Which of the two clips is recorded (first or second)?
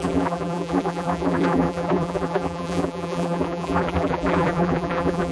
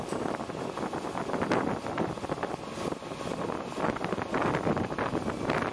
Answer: second